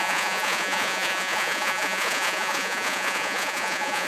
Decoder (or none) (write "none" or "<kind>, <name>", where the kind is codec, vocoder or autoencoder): vocoder, Vocos